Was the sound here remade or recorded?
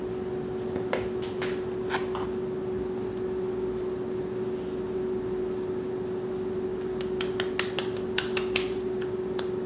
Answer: recorded